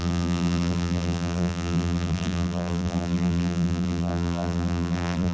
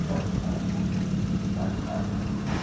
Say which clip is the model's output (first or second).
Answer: first